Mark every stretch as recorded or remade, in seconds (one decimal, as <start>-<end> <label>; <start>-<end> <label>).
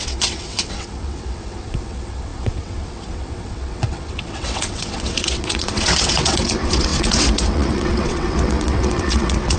0.0-9.6 remade